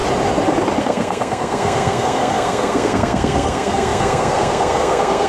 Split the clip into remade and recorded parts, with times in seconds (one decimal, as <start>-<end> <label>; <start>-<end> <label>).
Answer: 0.0-0.8 recorded; 0.8-5.3 remade